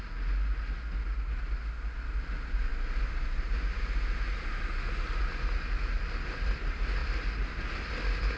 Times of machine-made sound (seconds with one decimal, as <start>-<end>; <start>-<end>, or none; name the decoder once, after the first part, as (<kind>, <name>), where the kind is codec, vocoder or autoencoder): none